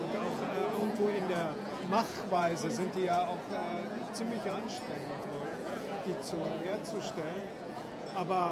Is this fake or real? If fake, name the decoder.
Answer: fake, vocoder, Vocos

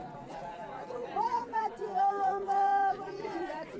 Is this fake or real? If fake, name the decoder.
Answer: fake, vocoder, Vocos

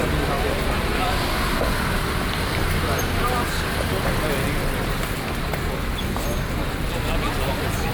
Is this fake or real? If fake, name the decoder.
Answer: real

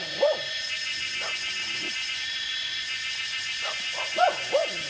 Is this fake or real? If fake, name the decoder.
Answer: fake, vocoder, Vocos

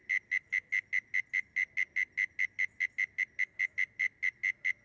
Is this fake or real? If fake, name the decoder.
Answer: real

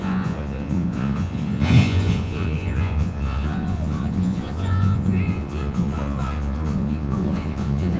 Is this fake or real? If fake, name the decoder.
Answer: fake, vocoder, Vocos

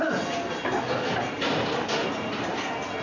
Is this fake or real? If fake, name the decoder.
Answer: real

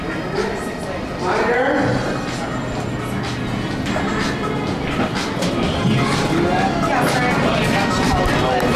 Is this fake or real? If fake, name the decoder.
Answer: real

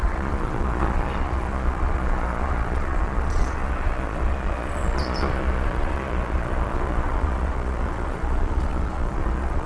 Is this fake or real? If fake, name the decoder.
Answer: fake, vocoder, Vocos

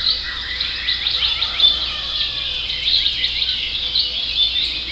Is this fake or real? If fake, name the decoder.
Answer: real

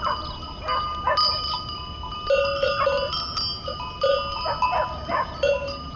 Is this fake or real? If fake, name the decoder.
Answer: real